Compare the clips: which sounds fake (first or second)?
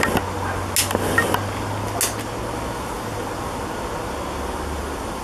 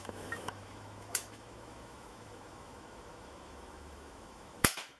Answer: second